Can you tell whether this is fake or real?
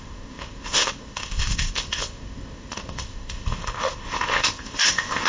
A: fake